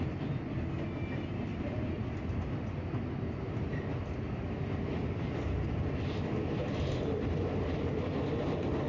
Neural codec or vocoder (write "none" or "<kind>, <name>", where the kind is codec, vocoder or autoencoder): none